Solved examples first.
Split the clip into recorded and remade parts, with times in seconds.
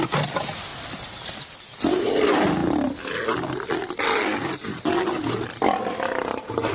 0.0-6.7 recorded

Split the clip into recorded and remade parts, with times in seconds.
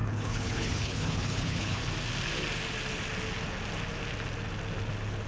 0.0-1.8 remade; 1.8-5.3 recorded